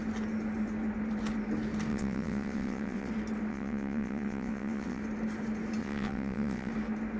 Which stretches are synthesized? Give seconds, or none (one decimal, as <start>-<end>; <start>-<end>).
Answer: 1.9-3.1; 3.5-5.0; 5.8-6.7